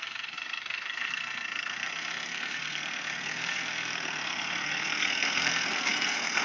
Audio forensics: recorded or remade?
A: remade